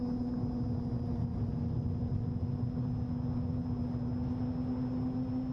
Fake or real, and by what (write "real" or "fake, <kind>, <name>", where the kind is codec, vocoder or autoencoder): real